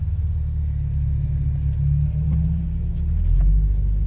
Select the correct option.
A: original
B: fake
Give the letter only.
A